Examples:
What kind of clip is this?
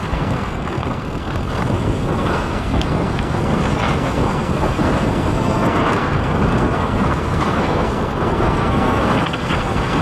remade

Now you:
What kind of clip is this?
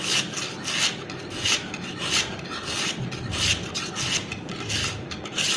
recorded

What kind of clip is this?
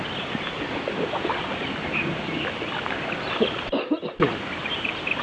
recorded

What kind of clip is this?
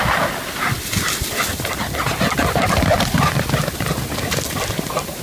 recorded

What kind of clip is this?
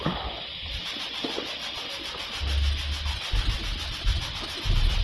recorded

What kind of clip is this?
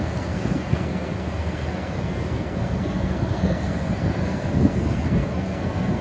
remade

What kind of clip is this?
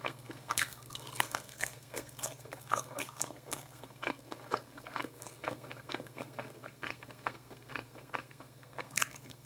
remade